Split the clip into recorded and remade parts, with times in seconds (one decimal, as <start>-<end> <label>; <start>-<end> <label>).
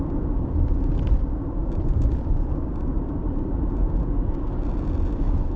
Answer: 0.0-1.6 recorded; 1.6-3.5 remade; 3.5-5.6 recorded